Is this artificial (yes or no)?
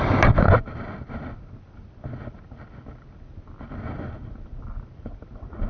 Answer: no